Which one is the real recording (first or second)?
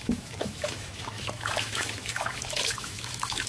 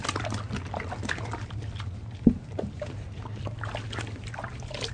second